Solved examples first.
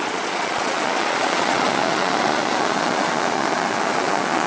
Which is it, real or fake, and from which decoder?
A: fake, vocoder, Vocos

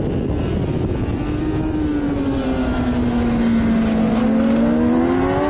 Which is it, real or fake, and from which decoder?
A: real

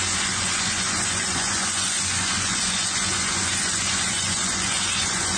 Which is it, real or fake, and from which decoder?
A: fake, vocoder, Vocos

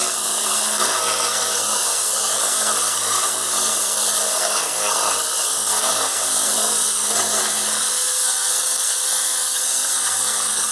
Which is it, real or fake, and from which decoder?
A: fake, codec, SNAC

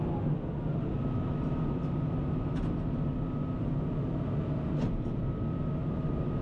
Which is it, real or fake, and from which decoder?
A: real